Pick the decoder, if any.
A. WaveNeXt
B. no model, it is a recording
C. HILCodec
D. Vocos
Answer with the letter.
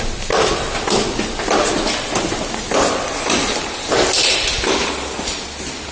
B